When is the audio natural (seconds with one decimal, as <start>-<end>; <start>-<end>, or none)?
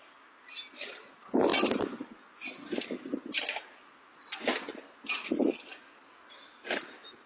0.0-7.3